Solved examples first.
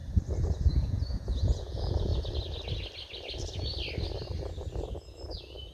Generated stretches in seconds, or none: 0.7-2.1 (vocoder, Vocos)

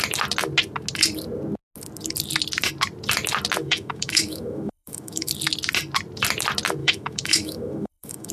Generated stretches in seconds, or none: 3.6-5.3 (autoencoder, DAC-VAE); 6.8-8.3

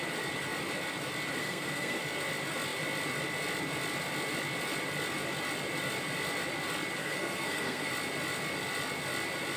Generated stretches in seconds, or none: 1.4-2.0 (codec, SNAC); 7.0-7.9

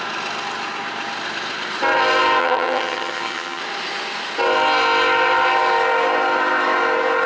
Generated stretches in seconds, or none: 2.4-3.6 (vocoder, HiFi-GAN)

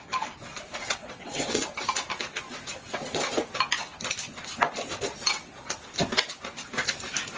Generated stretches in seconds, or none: 0.8-1.6 (vocoder, WaveNeXt); 2.5-3.3

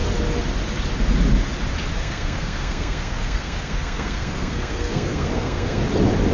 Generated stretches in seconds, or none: 2.0-5.8 (codec, SNAC)

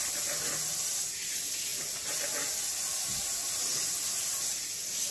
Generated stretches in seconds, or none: none

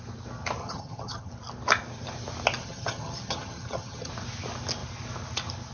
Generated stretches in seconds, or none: 0.6-1.3 (vocoder, HiFi-GAN); 2.6-4.1